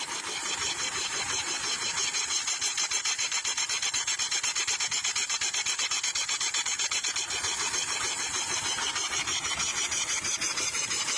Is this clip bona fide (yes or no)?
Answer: no